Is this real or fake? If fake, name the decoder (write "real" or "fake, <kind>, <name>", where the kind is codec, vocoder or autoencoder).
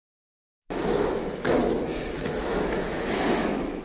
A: fake, autoencoder, DAC-VAE